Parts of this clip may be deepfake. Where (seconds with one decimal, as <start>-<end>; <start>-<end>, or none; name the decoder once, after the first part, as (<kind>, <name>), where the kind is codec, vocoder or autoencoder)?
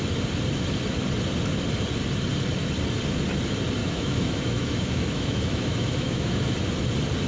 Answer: 3.8-6.5 (autoencoder, DAC-VAE)